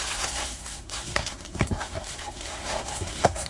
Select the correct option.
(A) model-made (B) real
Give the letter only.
A